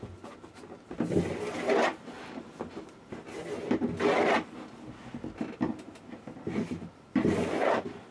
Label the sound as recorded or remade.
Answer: recorded